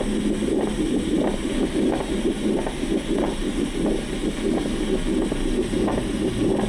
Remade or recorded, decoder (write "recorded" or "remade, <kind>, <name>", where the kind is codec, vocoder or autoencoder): recorded